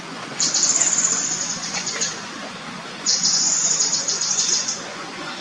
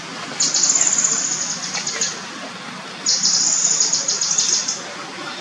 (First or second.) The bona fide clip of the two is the second